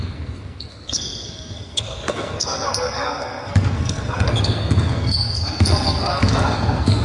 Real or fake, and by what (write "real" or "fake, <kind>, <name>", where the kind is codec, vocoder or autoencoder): fake, codec, SNAC